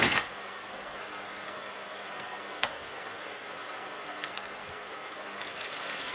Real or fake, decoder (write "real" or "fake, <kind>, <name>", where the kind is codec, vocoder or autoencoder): fake, codec, SNAC